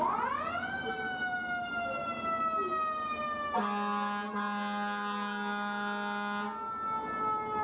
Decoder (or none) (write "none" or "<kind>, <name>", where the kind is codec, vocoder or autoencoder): none